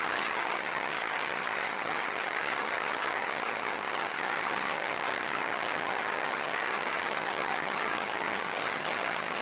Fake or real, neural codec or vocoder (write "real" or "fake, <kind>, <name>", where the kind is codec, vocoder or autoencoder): fake, vocoder, HiFi-GAN